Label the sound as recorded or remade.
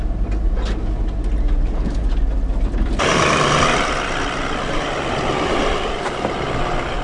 recorded